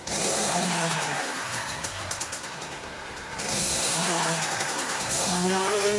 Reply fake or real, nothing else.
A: fake